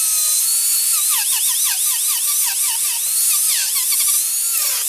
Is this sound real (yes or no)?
yes